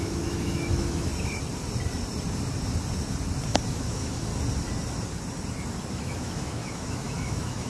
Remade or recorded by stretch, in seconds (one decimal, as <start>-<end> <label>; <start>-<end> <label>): 0.0-1.1 remade; 1.1-3.7 recorded; 3.7-4.3 remade; 4.3-5.9 recorded; 5.9-7.7 remade